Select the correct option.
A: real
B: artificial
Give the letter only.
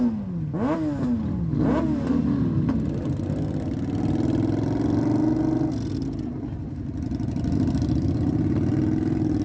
A